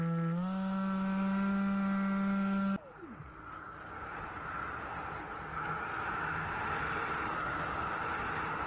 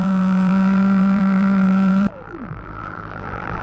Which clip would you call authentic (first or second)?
first